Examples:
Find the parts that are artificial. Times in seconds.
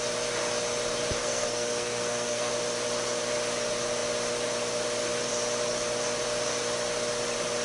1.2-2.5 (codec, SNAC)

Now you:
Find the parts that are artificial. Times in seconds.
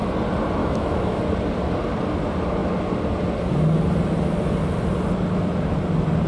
0.6-1.2 (autoencoder, DAC-VAE)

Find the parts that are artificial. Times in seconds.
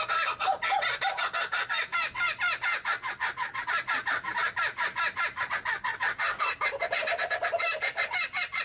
none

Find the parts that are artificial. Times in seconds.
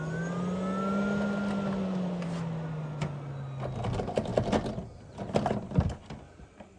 none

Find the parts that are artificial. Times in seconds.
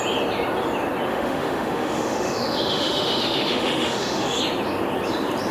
1.1-4.4 (autoencoder, DAC-VAE)